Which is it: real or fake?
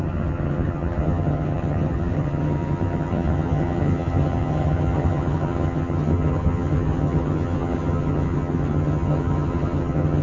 fake